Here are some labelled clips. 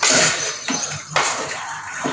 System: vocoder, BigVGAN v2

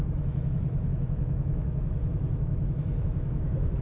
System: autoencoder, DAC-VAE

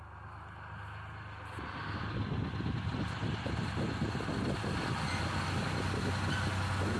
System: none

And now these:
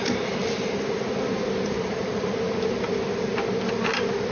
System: none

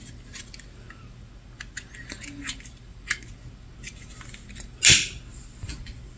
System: none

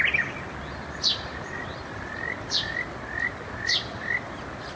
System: none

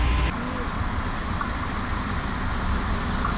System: none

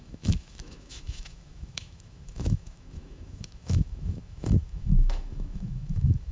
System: autoencoder, DAC-VAE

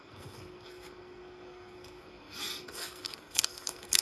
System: codec, SNAC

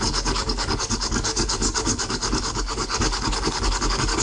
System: codec, DAC